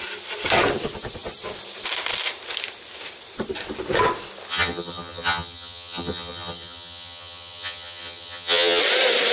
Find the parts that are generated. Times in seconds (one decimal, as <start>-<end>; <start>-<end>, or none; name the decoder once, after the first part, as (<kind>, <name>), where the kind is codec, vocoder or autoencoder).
4.5-8.8 (vocoder, HiFi-GAN)